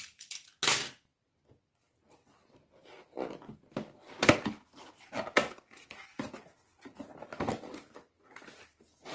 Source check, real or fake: real